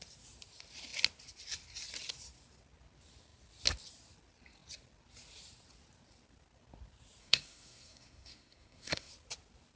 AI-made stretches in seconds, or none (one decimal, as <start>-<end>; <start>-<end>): 7.2-9.1